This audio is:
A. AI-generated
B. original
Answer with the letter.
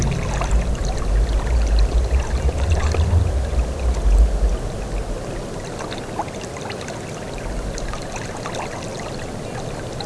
B